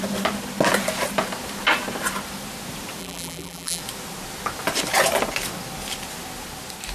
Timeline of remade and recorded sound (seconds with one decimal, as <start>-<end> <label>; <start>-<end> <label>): 0.0-3.0 recorded; 3.0-3.8 remade; 3.8-6.9 recorded